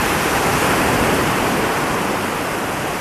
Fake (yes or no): no